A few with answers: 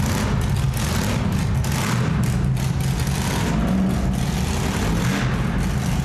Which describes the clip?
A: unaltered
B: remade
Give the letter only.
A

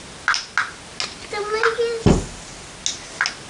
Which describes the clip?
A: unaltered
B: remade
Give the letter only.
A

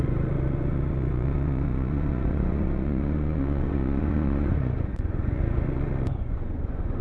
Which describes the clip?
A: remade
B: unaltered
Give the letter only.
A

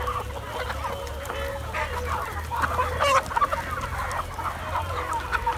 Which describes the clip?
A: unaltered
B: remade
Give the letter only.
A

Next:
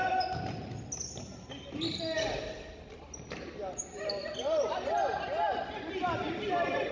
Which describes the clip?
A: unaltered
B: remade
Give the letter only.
A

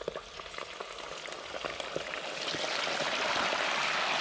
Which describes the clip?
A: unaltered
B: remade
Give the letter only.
A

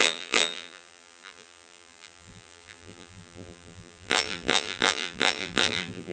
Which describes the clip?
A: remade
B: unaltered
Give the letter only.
A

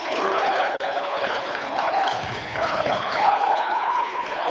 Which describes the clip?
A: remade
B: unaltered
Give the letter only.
A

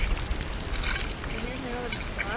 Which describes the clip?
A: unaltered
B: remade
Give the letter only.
A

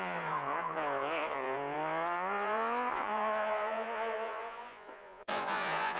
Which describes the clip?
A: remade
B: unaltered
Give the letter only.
A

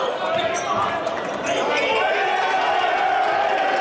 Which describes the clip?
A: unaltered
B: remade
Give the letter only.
A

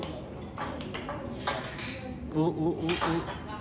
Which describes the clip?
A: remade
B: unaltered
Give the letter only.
B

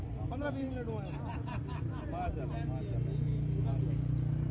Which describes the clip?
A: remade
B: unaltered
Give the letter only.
B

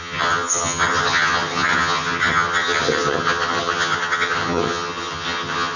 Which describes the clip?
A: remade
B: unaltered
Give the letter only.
A